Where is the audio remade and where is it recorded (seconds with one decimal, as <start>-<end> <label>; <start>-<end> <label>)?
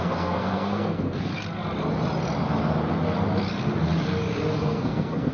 0.0-1.3 remade; 1.3-4.5 recorded; 4.5-5.3 remade